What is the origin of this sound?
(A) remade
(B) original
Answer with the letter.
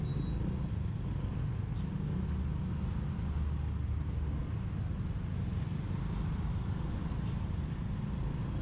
B